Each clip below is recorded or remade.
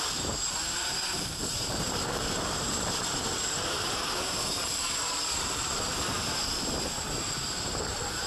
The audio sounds remade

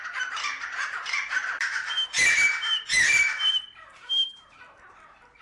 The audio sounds remade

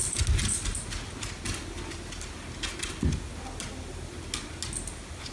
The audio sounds recorded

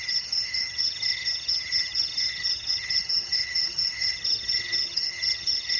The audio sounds remade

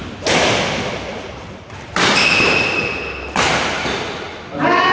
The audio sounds recorded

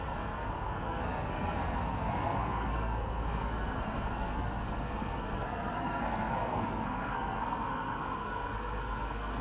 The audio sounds remade